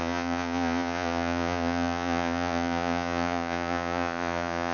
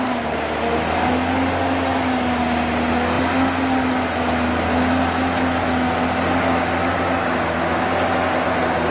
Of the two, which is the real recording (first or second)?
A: second